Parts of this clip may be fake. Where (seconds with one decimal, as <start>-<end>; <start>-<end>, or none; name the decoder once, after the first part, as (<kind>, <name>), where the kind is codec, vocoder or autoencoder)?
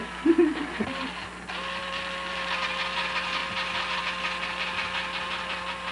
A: none